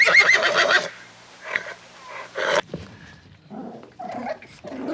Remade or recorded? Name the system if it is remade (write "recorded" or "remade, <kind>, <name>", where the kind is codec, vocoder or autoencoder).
remade, vocoder, BigVGAN v2